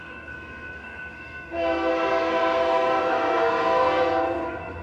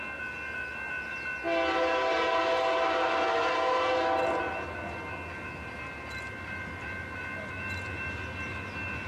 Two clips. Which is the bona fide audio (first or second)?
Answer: second